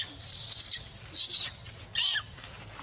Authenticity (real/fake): real